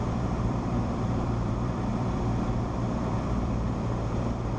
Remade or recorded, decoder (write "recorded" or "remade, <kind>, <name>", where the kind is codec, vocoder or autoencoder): remade, vocoder, BigVGAN v2